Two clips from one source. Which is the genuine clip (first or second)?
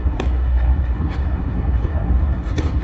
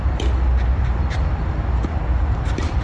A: second